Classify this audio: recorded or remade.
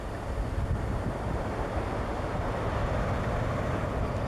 recorded